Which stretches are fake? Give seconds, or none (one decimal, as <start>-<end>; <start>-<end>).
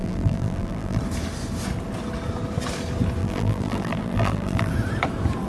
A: 0.0-1.0; 3.2-4.7